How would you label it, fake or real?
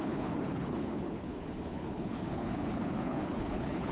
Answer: fake